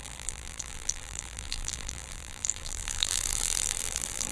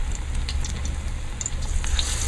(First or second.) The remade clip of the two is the first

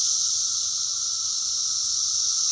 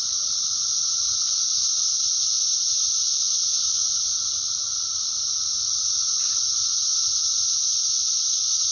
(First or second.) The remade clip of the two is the second